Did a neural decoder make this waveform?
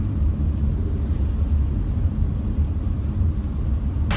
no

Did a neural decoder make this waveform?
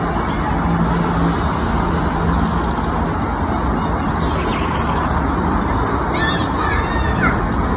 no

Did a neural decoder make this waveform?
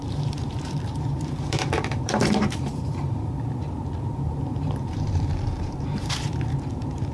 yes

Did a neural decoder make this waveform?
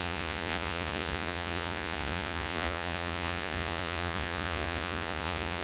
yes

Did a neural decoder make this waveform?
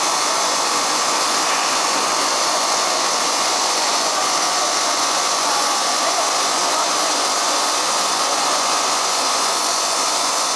yes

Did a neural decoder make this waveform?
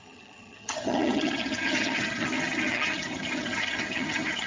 yes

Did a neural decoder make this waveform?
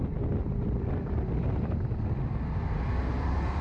yes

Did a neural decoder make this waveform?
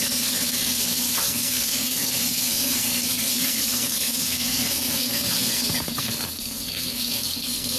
yes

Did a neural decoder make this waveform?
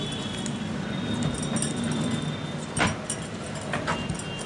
no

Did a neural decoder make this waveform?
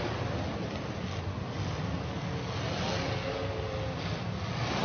no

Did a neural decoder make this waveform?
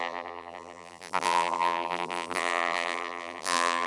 yes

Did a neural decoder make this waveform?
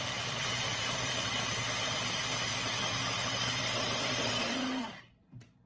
yes